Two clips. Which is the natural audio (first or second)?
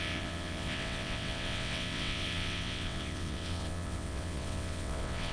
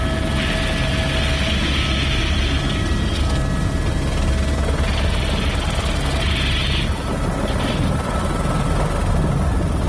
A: second